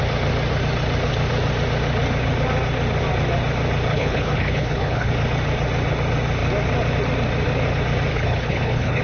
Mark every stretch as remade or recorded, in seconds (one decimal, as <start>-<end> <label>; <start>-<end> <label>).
0.0-3.9 recorded; 3.9-5.1 remade; 5.1-8.1 recorded; 8.1-9.0 remade